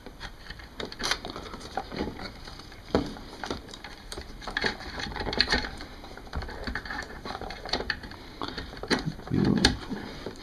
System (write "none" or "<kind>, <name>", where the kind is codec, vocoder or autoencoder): vocoder, BigVGAN v2